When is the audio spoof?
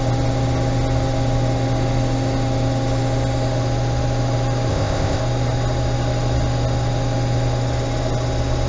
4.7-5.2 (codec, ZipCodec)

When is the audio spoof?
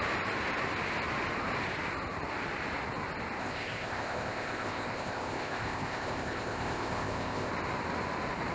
3.4-7.5 (codec, ZipCodec)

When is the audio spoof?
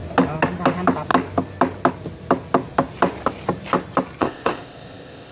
4.2-5.3 (codec, ZipCodec)